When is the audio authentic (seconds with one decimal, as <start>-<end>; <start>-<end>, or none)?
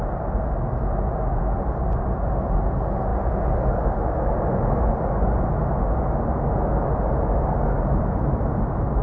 0.0-9.0